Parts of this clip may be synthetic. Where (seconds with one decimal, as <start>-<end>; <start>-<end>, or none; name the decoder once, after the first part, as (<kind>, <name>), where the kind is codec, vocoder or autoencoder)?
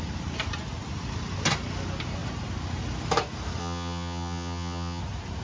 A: 3.6-5.0 (vocoder, HiFi-GAN)